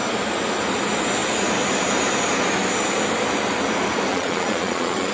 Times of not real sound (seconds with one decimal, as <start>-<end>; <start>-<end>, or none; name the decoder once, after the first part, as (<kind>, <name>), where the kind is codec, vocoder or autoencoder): 4.1-5.1 (vocoder, Vocos)

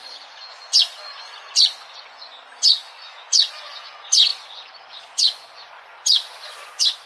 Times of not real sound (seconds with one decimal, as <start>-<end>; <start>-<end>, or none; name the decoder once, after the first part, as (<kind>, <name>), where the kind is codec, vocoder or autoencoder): 0.0-7.1 (vocoder, Vocos)

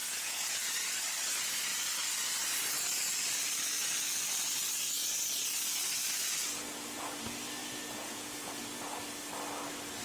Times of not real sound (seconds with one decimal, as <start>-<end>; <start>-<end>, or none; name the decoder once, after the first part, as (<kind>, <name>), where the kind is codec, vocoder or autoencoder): 0.0-0.7 (vocoder, Vocos); 7.6-8.5